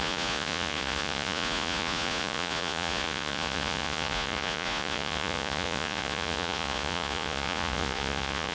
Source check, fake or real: fake